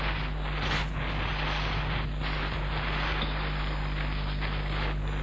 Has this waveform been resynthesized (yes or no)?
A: no